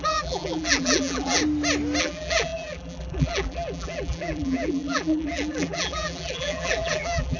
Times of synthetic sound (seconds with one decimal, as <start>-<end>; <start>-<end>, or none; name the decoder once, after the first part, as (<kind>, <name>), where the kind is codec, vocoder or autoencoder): 0.0-1.4 (vocoder, BigVGAN v2); 2.0-7.4